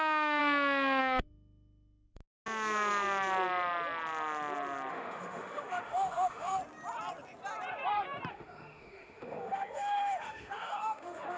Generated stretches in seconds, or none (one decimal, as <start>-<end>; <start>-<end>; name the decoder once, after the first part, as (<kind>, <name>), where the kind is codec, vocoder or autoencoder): 0.0-0.4 (autoencoder, DAC-VAE); 1.0-2.2; 4.9-6.6; 8.3-11.4